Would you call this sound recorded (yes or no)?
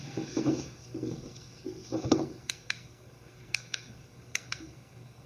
no